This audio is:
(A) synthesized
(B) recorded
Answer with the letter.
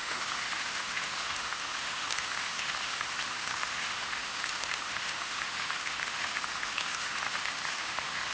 A